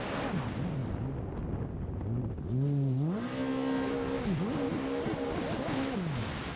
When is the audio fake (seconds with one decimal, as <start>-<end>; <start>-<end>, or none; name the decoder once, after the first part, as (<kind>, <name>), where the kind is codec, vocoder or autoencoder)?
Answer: none